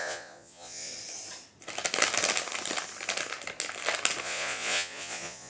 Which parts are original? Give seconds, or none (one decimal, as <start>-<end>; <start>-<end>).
0.9-4.2